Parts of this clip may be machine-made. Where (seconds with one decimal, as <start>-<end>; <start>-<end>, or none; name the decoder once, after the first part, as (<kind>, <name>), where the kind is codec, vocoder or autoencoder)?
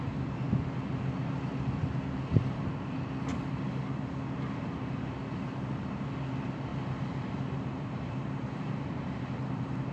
6.7-9.9 (vocoder, BigVGAN v2)